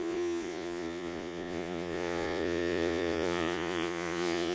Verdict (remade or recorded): remade